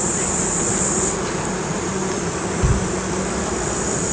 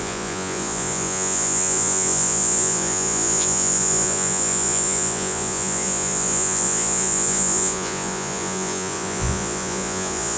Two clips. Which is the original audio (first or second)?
first